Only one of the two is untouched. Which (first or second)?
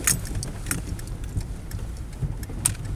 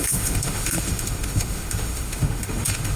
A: first